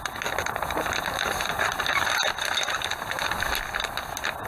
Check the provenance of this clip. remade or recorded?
recorded